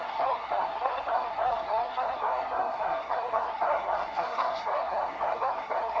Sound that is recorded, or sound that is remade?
remade